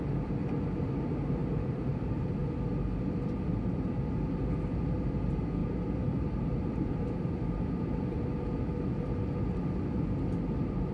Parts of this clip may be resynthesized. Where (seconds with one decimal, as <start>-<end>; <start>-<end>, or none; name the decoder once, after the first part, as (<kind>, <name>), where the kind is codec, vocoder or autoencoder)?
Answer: 0.4-0.9 (vocoder, BigVGAN v2); 1.4-2.3; 5.6-8.2